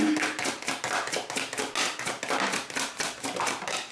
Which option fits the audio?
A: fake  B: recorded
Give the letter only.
B